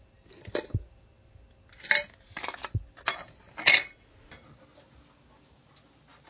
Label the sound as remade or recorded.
recorded